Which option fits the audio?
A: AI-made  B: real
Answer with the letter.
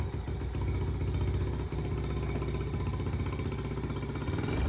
B